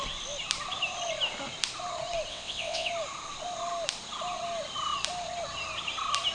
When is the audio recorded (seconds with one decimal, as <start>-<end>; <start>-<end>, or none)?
0.0-2.3; 2.9-6.3